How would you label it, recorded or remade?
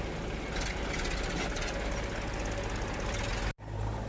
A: recorded